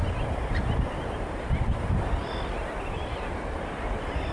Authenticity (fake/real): real